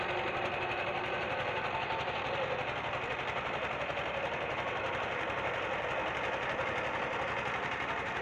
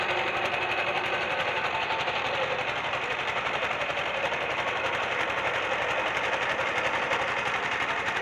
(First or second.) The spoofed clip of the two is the second